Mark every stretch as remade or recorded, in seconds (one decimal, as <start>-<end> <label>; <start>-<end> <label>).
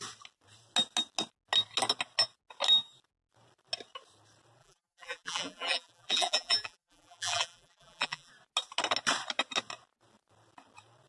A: 0.0-4.6 recorded; 4.6-8.3 remade; 8.3-11.1 recorded